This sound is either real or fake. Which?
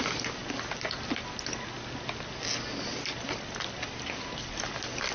real